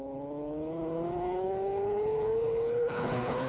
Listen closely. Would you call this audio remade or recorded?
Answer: remade